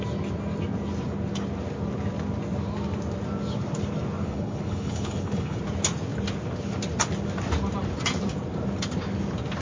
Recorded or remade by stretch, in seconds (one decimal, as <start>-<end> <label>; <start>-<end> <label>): 0.0-4.2 recorded; 4.2-5.6 remade; 5.6-9.6 recorded